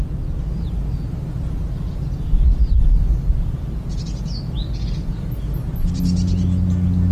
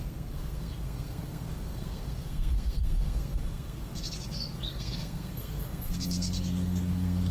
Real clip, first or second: first